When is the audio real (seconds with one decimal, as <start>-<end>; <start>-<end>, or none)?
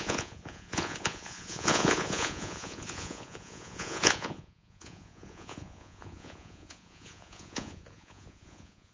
none